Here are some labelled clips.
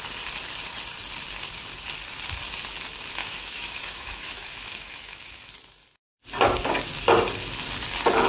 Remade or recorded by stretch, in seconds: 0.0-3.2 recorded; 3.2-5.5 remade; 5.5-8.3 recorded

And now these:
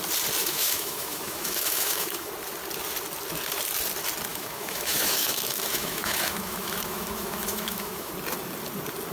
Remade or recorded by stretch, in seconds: 0.0-0.4 recorded; 0.4-2.3 remade; 2.3-4.3 recorded; 4.3-8.1 remade; 8.1-9.1 recorded

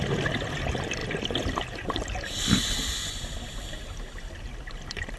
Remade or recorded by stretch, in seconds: 0.0-5.2 recorded

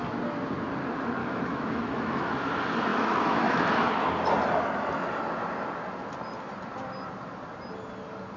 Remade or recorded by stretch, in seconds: 0.0-1.2 recorded; 1.2-2.5 remade; 2.5-2.9 recorded; 2.9-3.6 remade; 3.6-8.4 recorded